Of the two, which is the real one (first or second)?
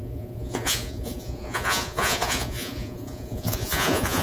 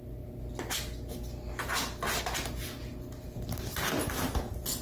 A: second